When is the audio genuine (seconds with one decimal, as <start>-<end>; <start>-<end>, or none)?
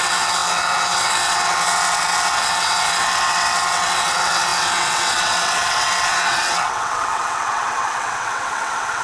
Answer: none